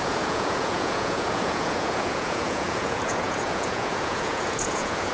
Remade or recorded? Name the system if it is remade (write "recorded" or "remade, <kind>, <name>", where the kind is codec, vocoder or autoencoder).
remade, vocoder, Vocos